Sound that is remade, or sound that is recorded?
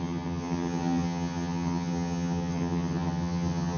remade